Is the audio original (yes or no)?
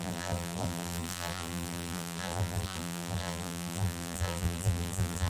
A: no